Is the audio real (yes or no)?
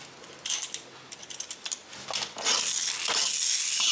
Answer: yes